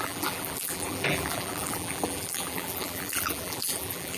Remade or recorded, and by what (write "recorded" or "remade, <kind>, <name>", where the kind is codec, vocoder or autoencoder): remade, vocoder, BigVGAN v2